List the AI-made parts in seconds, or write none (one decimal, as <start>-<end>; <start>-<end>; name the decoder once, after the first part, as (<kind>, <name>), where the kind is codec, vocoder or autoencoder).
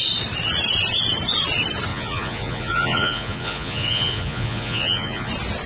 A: 1.9-5.3 (vocoder, Vocos)